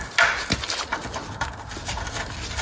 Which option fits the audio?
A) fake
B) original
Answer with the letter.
B